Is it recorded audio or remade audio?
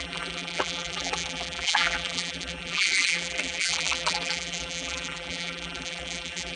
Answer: remade